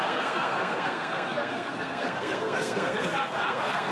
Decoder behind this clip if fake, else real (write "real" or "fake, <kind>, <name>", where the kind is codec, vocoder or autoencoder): fake, codec, SNAC